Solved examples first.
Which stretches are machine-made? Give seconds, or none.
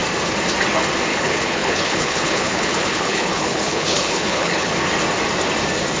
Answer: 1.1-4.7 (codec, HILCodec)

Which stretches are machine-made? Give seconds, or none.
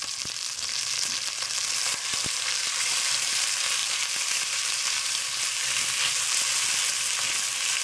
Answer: none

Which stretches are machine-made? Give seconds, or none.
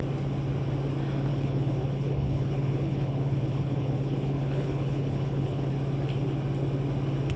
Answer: 1.3-5.7 (codec, HILCodec)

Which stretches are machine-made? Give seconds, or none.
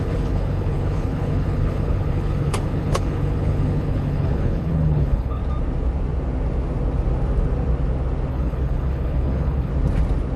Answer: 0.0-5.4 (codec, HILCodec); 8.3-9.7